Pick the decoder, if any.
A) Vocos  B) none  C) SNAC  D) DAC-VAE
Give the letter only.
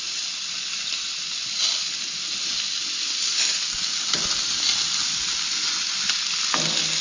B